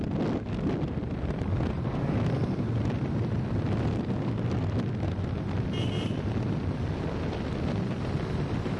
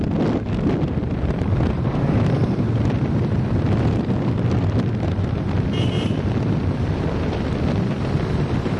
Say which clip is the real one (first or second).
first